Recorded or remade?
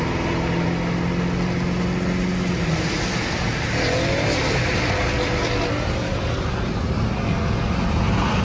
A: recorded